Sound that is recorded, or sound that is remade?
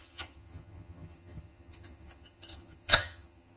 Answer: remade